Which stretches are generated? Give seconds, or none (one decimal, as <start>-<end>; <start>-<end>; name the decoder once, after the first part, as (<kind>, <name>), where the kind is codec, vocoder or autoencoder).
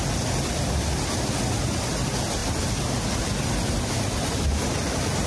none